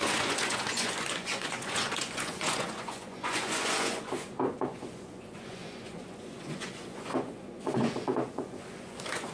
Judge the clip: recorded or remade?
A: remade